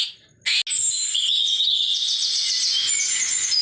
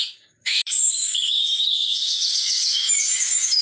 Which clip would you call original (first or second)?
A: first